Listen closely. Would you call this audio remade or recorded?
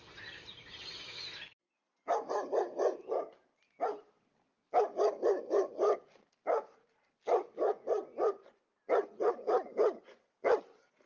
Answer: recorded